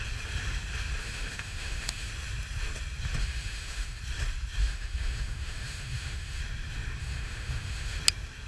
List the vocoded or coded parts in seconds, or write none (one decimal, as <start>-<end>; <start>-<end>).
1.0-2.1; 3.2-4.0; 4.6-6.4; 7.0-8.0